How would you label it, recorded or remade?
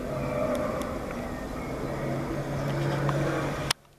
recorded